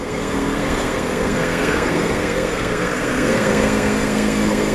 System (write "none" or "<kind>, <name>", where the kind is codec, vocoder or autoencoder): codec, SNAC